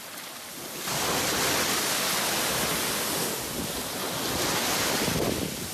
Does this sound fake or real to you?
real